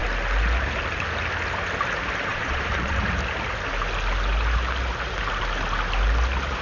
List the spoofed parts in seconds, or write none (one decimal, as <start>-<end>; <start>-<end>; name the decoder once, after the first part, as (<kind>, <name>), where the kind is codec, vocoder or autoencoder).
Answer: 2.3-3.0 (vocoder, Vocos)